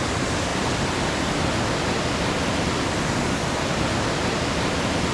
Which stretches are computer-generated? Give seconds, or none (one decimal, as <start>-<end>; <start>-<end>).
none